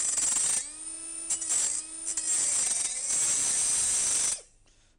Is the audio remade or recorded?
recorded